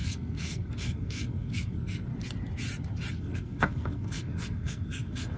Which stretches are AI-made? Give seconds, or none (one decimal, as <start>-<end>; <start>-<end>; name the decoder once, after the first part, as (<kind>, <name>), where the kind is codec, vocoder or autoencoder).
0.0-2.1 (codec, SNAC); 3.1-5.4